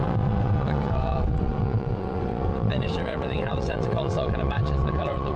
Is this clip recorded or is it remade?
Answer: remade